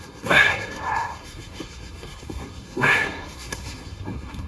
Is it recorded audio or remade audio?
remade